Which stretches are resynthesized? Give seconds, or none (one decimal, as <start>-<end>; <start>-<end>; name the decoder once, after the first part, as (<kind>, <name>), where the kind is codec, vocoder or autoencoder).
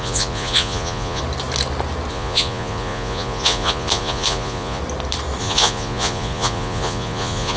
0.0-1.2 (vocoder, Vocos); 2.1-4.8; 5.4-7.6